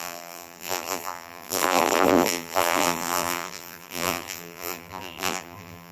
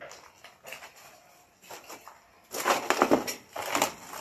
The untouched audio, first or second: second